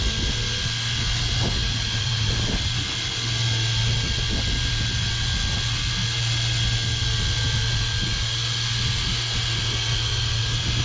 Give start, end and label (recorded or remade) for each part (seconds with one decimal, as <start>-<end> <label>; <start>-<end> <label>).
0.0-1.6 recorded; 1.6-2.3 remade; 2.3-10.8 recorded